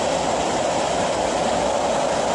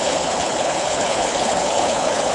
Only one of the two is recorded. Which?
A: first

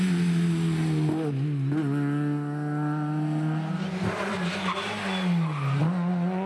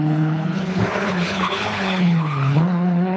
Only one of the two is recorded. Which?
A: first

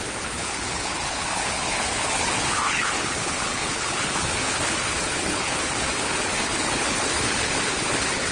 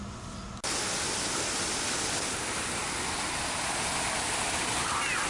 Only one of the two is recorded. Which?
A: second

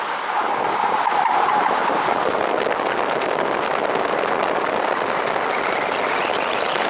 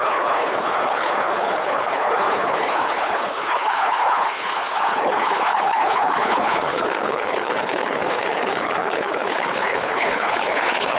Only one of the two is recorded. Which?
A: first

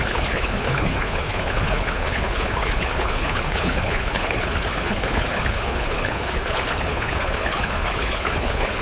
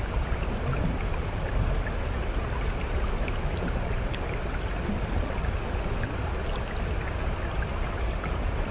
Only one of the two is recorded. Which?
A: second